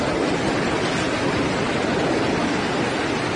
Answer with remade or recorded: recorded